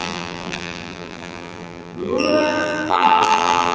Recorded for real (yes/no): no